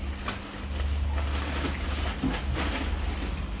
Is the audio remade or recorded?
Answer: recorded